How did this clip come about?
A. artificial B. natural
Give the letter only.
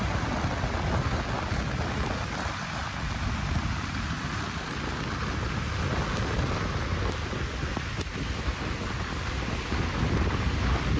B